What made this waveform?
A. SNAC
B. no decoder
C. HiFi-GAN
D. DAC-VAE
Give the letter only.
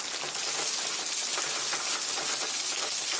B